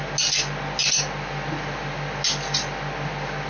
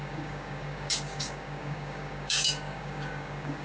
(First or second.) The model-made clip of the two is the second